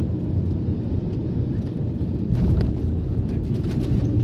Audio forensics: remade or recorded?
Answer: recorded